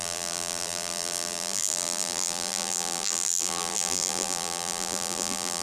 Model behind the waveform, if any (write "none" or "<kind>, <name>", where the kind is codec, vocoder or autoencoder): vocoder, BigVGAN v2